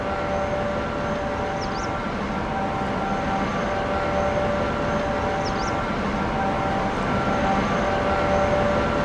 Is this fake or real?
real